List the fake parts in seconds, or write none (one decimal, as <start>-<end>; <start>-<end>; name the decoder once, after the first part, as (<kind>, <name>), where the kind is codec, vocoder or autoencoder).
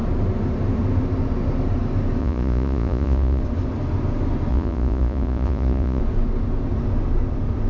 2.2-3.4 (vocoder, Vocos); 4.5-6.0